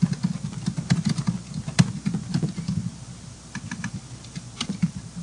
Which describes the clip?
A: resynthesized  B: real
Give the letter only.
A